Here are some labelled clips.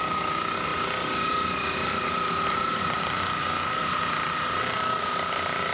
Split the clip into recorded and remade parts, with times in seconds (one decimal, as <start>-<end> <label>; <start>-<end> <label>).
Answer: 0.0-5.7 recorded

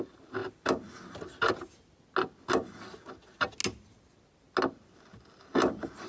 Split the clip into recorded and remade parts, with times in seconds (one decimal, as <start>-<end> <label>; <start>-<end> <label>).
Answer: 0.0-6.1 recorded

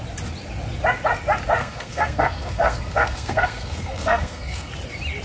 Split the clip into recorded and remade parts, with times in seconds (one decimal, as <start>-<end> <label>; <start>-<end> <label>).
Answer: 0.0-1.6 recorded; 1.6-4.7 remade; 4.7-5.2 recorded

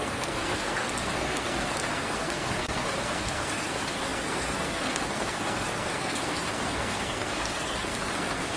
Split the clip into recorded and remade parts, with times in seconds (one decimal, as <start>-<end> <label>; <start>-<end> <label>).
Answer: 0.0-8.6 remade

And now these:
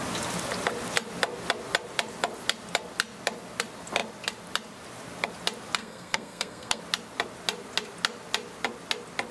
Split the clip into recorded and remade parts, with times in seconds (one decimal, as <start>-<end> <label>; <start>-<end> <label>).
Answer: 0.0-5.8 recorded; 5.8-6.8 remade; 6.8-9.3 recorded

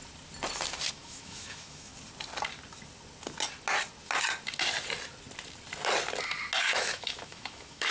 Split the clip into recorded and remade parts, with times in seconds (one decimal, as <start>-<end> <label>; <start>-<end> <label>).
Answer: 0.0-0.9 recorded; 0.9-1.9 remade; 1.9-6.6 recorded; 6.6-7.9 remade